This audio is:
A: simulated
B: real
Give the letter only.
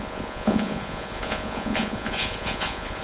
A